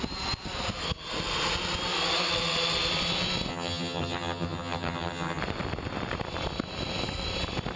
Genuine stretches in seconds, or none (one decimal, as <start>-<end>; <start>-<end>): 0.0-3.5; 5.4-7.8

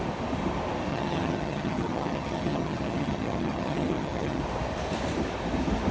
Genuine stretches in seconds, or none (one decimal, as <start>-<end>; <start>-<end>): 0.0-0.9; 4.4-5.9

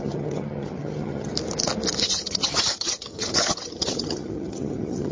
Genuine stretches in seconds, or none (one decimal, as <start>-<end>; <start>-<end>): 1.3-2.0

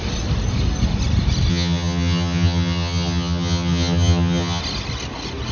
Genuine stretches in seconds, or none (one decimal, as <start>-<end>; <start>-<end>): 0.0-1.5; 4.6-5.5

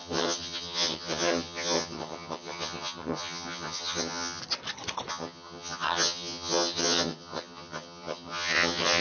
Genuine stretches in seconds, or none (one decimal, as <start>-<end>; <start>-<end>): 4.4-5.1

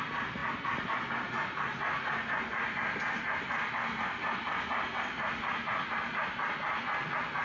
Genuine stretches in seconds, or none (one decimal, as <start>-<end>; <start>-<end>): 0.0-7.4